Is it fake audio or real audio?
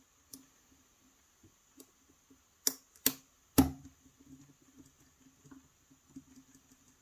real